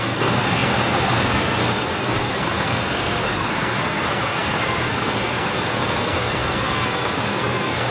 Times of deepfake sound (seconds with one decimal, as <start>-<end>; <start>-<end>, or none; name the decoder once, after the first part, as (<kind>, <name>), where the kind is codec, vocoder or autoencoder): 0.0-7.9 (codec, SNAC)